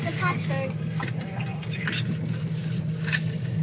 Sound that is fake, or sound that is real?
real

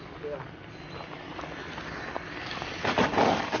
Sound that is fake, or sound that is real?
real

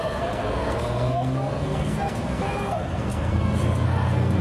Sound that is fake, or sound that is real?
fake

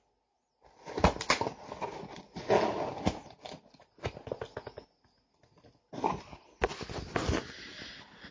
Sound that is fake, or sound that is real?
real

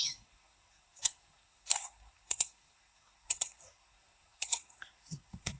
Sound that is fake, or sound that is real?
fake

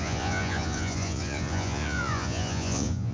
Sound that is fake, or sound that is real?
fake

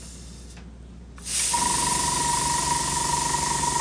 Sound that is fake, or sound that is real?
real